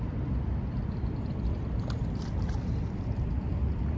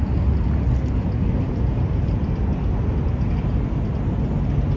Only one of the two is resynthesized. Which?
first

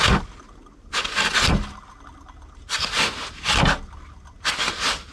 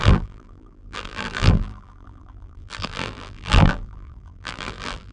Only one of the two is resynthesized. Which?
second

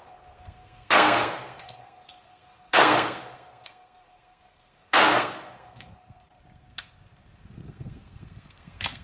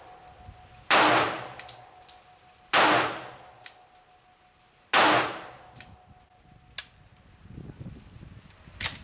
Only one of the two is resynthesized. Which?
first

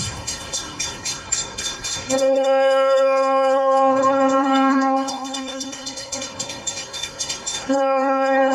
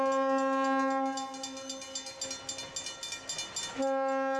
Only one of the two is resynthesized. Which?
first